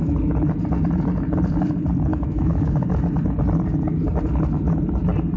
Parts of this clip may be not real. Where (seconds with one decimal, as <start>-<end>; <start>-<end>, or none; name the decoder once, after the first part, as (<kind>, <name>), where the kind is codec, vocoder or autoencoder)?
2.1-2.9 (autoencoder, DAC-VAE)